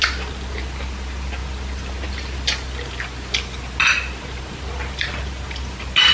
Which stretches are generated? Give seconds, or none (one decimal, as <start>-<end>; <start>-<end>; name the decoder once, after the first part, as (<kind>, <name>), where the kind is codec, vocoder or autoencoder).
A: none